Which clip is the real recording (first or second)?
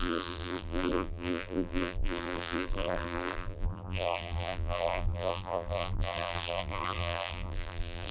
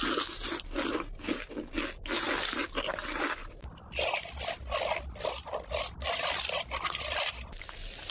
second